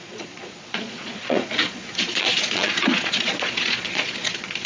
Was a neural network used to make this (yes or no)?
yes